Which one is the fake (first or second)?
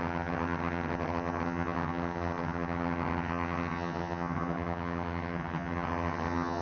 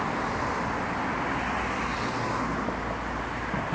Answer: first